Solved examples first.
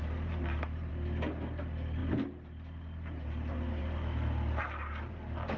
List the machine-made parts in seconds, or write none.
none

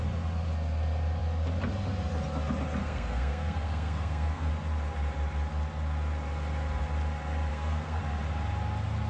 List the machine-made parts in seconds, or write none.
2.8-4.5 (codec, SNAC); 7.5-8.0

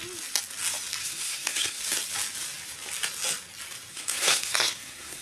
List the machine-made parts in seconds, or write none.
1.0-1.8 (codec, SNAC); 3.9-5.2